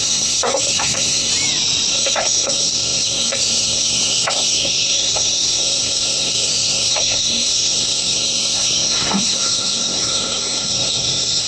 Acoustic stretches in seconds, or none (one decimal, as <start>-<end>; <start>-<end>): 1.3-1.9